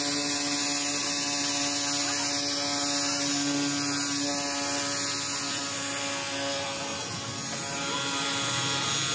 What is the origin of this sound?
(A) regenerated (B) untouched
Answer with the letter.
B